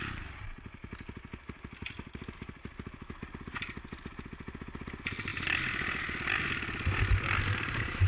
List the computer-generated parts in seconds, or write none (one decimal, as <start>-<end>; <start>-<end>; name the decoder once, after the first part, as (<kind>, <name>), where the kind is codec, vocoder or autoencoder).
none